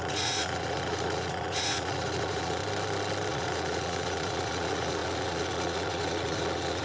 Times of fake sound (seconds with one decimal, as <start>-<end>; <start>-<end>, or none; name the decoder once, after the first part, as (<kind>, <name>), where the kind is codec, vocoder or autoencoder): 0.0-2.6 (vocoder, Vocos); 3.3-6.8